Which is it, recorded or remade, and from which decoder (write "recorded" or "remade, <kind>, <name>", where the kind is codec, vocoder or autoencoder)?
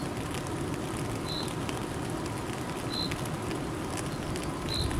recorded